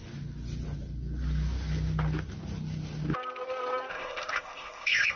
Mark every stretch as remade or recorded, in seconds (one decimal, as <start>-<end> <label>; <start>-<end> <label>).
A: 0.0-3.9 recorded; 3.9-5.2 remade